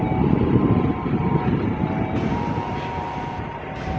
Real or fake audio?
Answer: fake